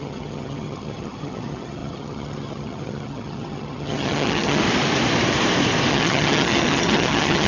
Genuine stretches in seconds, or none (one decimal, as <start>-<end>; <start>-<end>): 4.6-5.9